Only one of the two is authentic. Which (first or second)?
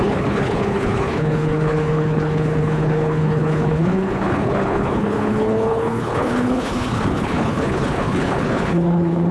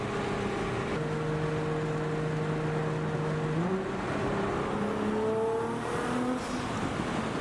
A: second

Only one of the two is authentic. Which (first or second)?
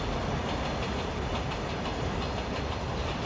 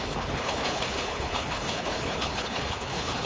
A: first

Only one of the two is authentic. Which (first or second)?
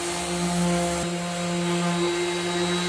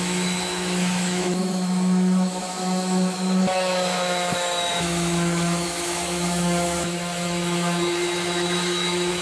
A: first